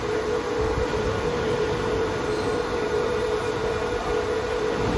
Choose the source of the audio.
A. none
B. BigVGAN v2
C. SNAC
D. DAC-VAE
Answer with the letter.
B